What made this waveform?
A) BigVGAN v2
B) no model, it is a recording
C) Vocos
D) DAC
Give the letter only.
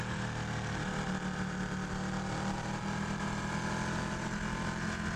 B